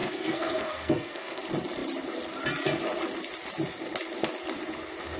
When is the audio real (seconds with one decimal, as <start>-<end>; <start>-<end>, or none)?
1.4-5.2